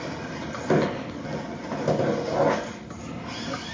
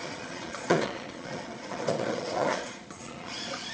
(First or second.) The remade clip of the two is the second